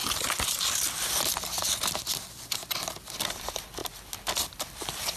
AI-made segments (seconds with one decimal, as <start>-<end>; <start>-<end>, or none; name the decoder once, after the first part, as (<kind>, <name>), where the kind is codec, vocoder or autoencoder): 3.1-3.8 (vocoder, BigVGAN v2); 4.8-5.2